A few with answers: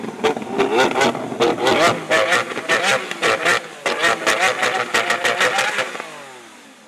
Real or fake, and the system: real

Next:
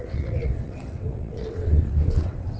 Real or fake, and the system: fake, vocoder, WaveNeXt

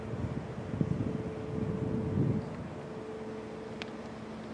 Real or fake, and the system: real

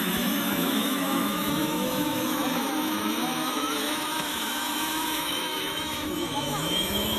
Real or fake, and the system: fake, autoencoder, DAC-VAE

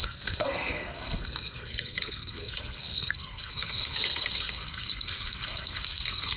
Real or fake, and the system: fake, codec, SNAC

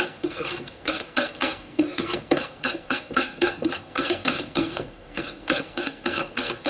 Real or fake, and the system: fake, codec, SNAC